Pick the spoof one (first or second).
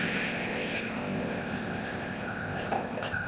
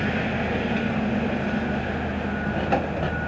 first